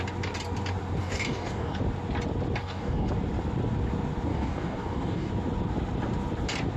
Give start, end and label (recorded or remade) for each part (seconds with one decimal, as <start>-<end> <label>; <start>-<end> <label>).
0.0-1.0 recorded; 1.0-1.8 remade; 1.8-2.6 recorded; 2.6-3.1 remade; 3.1-4.3 recorded; 4.3-5.3 remade; 5.3-6.8 recorded

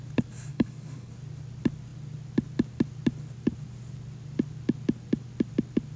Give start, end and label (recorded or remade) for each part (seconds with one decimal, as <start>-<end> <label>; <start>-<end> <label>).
0.0-0.5 recorded; 0.5-1.1 remade; 1.1-6.0 recorded

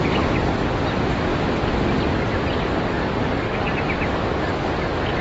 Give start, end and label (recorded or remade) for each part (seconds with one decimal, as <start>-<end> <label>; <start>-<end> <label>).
0.0-3.0 recorded; 3.0-3.8 remade; 3.8-5.2 recorded

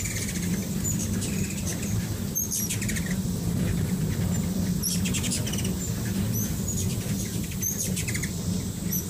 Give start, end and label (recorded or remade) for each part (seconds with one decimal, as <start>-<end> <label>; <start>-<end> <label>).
0.0-9.1 recorded

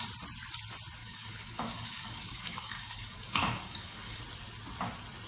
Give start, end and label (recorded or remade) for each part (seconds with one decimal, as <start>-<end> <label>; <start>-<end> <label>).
0.0-1.0 recorded; 1.0-4.2 remade; 4.2-5.3 recorded

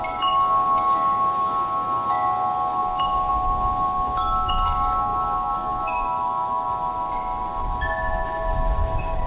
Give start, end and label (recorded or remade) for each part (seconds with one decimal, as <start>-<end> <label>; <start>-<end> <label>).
0.0-9.3 remade

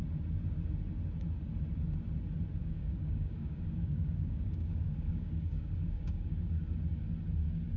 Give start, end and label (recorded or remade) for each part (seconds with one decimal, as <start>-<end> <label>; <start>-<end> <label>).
0.0-2.6 recorded; 2.6-6.6 remade; 6.6-7.8 recorded